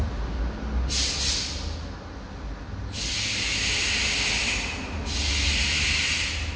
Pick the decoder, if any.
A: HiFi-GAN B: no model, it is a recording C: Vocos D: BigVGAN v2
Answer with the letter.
B